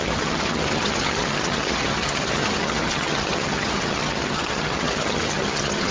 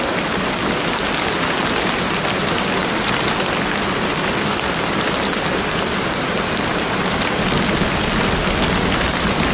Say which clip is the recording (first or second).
second